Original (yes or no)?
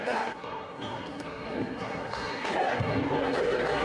no